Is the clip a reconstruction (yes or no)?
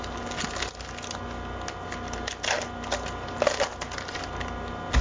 no